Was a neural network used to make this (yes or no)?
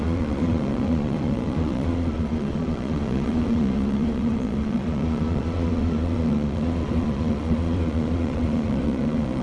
yes